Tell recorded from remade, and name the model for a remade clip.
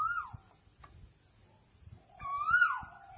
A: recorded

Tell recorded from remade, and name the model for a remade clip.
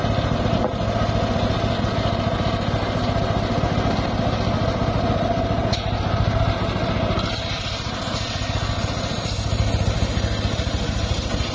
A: recorded